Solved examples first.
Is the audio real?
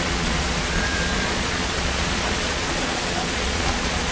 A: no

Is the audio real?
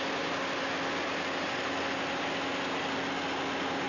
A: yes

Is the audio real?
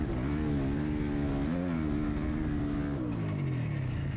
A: yes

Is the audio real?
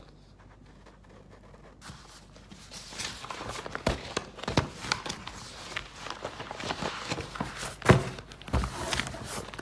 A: yes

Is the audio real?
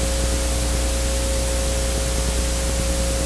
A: yes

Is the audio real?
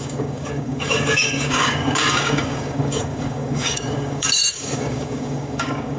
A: no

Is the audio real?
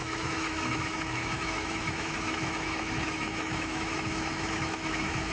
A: no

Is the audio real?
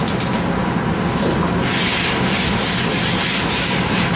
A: yes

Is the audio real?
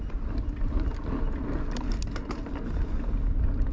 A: yes